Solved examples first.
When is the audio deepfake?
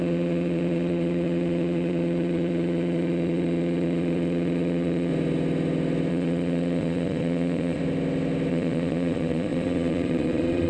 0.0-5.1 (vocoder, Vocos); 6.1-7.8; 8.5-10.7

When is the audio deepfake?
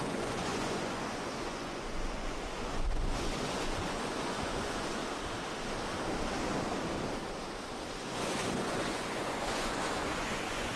0.0-5.0 (vocoder, Vocos); 7.9-10.8